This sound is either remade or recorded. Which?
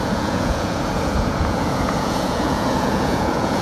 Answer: remade